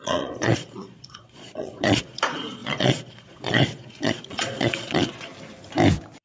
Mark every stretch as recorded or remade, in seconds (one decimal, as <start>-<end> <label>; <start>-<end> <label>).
0.0-5.3 remade; 5.3-6.2 recorded